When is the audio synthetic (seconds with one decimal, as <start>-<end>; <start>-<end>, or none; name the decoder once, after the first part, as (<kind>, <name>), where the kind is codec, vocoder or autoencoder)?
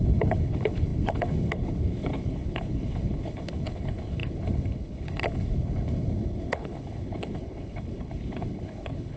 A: 0.0-9.2 (codec, HILCodec)